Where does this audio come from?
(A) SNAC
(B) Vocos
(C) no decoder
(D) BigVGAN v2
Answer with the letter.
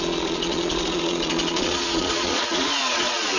B